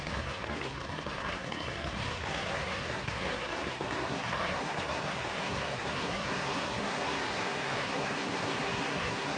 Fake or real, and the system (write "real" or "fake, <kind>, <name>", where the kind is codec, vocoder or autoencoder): fake, codec, SNAC